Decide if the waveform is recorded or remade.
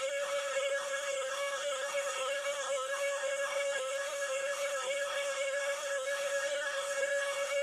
remade